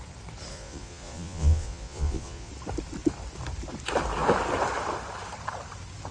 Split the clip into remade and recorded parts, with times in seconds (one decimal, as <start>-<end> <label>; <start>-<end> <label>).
0.0-0.5 recorded; 0.5-2.5 remade; 2.5-6.1 recorded